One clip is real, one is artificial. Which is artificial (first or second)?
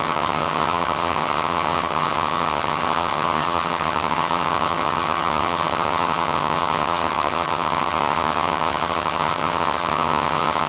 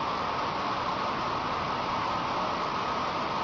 first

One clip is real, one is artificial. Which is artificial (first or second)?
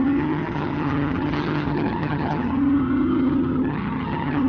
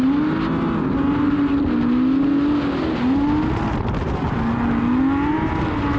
first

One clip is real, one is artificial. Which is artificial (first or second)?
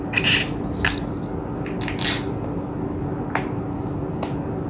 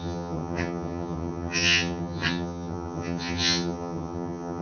second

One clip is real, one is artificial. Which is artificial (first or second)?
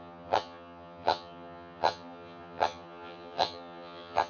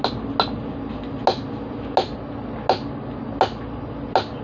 first